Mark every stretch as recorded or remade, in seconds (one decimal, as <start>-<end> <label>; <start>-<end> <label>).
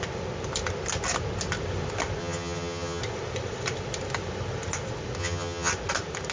0.0-2.2 recorded; 2.2-3.0 remade; 3.0-5.2 recorded; 5.2-5.7 remade; 5.7-6.3 recorded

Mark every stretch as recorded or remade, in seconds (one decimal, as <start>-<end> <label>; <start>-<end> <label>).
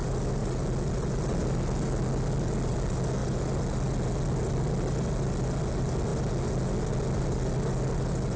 0.0-8.4 recorded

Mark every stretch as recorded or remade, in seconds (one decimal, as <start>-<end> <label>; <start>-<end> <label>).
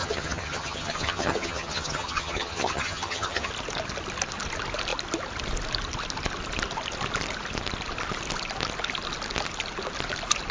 0.0-3.5 remade; 3.5-10.5 recorded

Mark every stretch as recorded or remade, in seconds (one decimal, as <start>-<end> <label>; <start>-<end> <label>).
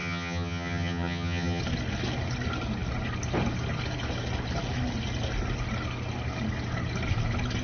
0.0-1.6 remade; 1.6-7.6 recorded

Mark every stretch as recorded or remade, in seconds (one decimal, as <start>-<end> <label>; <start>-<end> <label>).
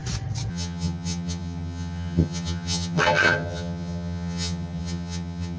0.0-0.5 recorded; 0.5-5.6 remade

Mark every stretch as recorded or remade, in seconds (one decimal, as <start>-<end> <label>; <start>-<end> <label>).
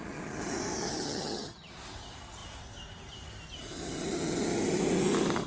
0.0-0.9 recorded; 0.9-1.7 remade; 1.7-5.5 recorded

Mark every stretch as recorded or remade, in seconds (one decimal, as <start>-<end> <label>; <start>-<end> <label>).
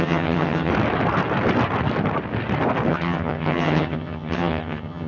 0.0-0.7 remade; 0.7-2.9 recorded; 2.9-5.1 remade